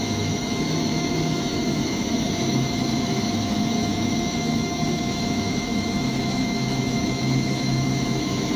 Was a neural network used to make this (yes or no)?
yes